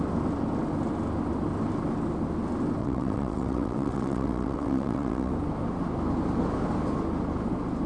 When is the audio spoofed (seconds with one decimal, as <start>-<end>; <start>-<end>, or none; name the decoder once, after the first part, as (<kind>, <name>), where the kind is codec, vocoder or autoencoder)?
2.8-5.3 (vocoder, WaveNeXt)